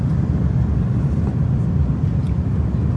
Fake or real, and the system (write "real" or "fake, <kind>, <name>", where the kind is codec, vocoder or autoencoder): real